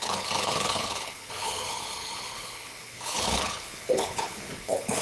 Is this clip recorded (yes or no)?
no